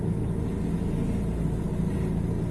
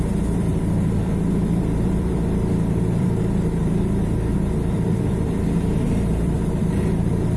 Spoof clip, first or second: second